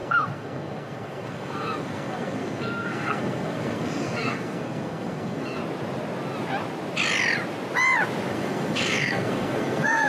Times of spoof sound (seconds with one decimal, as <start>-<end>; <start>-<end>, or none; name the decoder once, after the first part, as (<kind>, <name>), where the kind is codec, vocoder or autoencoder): 0.0-5.6 (codec, SNAC); 8.3-10.1

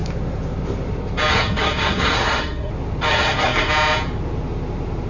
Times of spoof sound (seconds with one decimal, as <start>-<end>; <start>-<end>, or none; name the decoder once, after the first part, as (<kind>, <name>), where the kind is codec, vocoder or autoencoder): 1.3-2.7 (codec, SNAC); 3.1-3.7

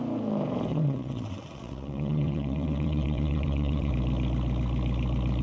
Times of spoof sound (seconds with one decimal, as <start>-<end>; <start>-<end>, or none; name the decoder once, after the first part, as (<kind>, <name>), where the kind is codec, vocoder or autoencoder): 0.7-3.9 (vocoder, WaveNeXt)

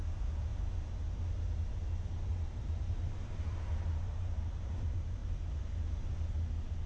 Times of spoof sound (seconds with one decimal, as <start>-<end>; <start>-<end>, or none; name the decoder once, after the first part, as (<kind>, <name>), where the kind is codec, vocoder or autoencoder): 0.0-0.5 (vocoder, BigVGAN v2); 2.3-5.2

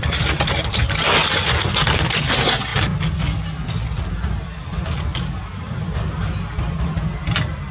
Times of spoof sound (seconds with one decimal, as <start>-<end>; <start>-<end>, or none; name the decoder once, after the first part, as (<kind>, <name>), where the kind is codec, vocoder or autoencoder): none